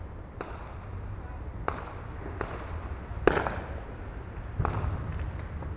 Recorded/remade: recorded